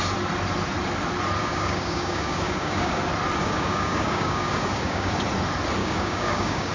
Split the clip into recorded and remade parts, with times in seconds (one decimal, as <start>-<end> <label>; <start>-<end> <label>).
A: 0.0-1.4 recorded; 1.4-3.0 remade; 3.0-3.4 recorded; 3.4-5.1 remade; 5.1-5.8 recorded; 5.8-6.7 remade